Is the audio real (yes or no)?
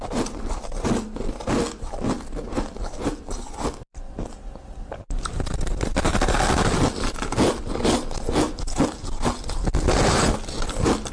yes